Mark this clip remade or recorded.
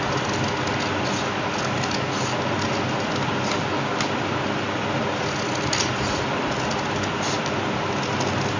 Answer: recorded